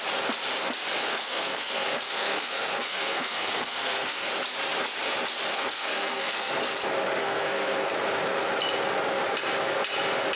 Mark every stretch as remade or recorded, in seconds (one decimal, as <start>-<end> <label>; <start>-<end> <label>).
0.0-1.0 recorded; 1.0-4.3 remade; 4.3-5.5 recorded; 5.5-6.5 remade; 6.5-7.2 recorded; 7.2-7.9 remade; 7.9-10.4 recorded